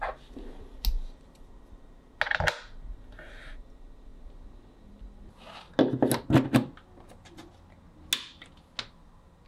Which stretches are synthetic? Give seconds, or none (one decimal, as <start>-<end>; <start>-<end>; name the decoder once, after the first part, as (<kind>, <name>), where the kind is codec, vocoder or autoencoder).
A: none